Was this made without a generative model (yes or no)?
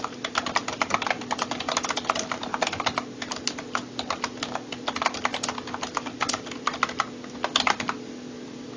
yes